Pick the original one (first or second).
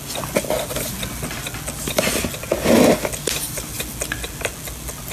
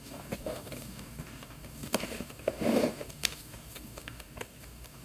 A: first